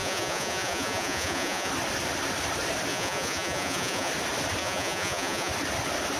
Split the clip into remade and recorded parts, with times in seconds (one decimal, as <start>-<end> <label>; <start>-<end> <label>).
0.0-1.7 remade; 1.7-2.9 recorded; 2.9-4.1 remade; 4.1-4.6 recorded; 4.6-5.5 remade; 5.5-6.2 recorded